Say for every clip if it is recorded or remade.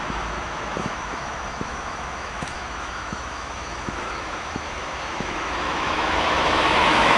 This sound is remade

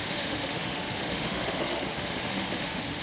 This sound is remade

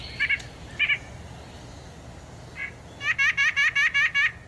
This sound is recorded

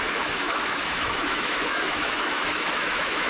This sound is remade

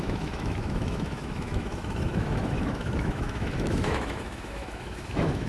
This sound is remade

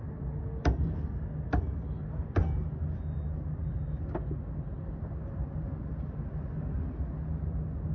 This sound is recorded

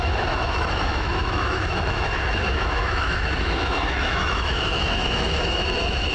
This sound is remade